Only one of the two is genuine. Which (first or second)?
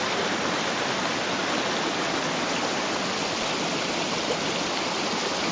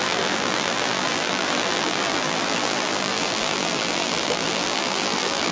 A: first